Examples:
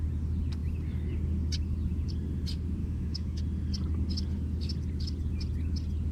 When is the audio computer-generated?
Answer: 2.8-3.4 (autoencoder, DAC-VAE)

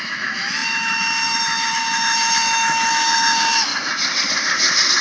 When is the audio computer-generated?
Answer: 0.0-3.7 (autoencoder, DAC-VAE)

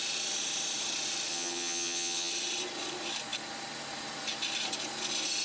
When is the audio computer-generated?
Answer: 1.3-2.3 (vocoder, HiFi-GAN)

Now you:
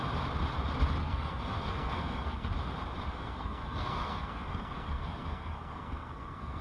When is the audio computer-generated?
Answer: 1.0-2.5 (codec, SNAC); 3.1-6.6

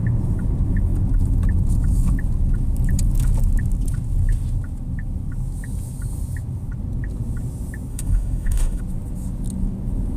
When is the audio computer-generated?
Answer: 7.9-8.8 (autoencoder, DAC-VAE)